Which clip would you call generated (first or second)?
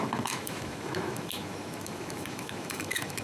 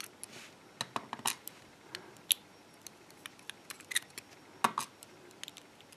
first